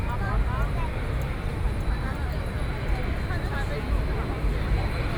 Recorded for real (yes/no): yes